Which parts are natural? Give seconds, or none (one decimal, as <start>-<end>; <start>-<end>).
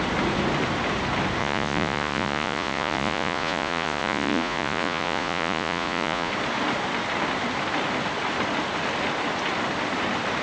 0.0-1.4; 6.3-10.4